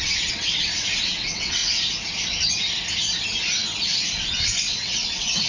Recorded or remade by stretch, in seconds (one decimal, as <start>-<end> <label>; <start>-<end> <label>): 0.0-1.6 remade; 1.6-4.3 recorded; 4.3-5.5 remade